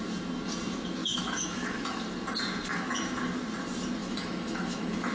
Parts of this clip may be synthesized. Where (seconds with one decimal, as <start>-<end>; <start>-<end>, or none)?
1.0-2.0; 2.7-3.2; 4.0-5.1